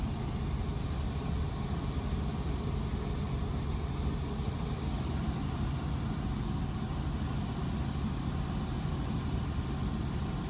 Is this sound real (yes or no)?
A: yes